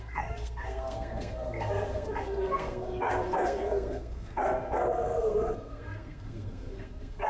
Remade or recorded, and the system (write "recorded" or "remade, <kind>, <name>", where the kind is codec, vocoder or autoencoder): remade, codec, SNAC